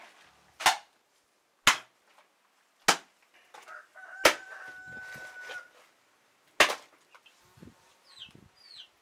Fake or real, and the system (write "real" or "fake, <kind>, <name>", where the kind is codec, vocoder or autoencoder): real